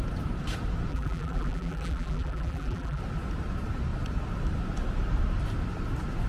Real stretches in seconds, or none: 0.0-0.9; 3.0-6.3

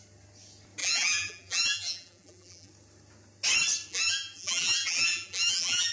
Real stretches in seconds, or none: 0.0-0.8; 2.7-3.9